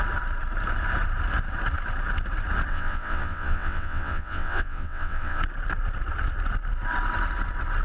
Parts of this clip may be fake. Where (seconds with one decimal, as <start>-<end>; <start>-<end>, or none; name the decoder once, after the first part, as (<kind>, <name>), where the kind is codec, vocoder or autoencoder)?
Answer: 2.7-5.4 (vocoder, WaveNeXt)